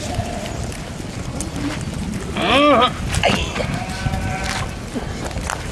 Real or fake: real